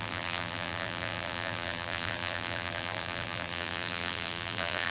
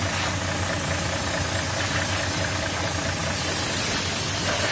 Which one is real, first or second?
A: second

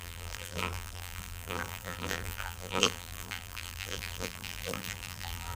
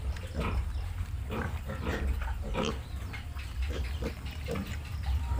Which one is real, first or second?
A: second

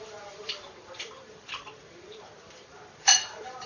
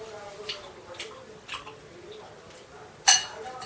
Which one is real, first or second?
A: second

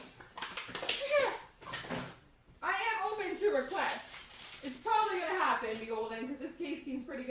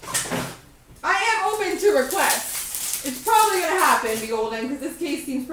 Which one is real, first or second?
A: second